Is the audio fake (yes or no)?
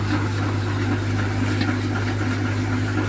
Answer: no